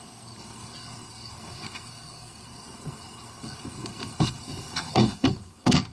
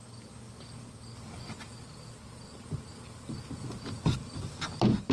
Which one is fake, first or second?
first